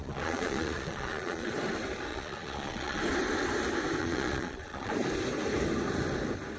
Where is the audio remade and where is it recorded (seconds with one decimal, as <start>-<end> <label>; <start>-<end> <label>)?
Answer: 0.0-1.5 remade; 1.5-2.1 recorded; 2.1-3.0 remade; 3.0-4.0 recorded; 4.0-4.9 remade; 4.9-6.6 recorded

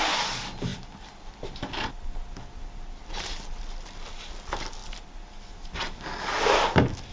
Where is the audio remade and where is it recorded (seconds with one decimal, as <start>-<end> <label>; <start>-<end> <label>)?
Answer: 0.0-7.1 recorded

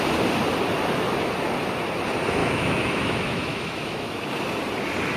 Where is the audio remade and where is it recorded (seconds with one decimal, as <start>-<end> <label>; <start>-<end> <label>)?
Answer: 0.0-2.4 recorded; 2.4-4.3 remade; 4.3-5.2 recorded

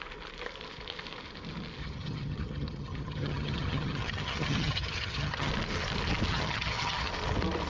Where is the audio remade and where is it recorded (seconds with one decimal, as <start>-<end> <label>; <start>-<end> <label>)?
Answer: 0.0-1.8 recorded; 1.8-5.5 remade; 5.5-6.3 recorded; 6.3-7.1 remade; 7.1-7.7 recorded

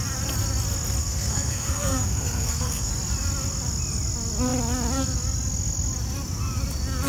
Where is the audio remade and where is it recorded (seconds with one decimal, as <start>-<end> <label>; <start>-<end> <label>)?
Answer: 0.0-1.0 recorded; 1.0-2.9 remade; 2.9-7.1 recorded

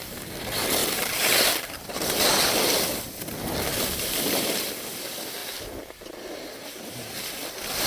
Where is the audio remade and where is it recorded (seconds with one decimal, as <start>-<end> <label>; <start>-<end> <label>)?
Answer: 0.0-0.8 recorded; 0.8-2.5 remade; 2.5-3.7 recorded; 3.7-4.7 remade; 4.7-5.4 recorded; 5.4-7.1 remade; 7.1-7.9 recorded